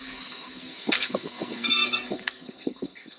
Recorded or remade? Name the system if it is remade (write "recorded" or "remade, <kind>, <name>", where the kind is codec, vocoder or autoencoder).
remade, codec, SNAC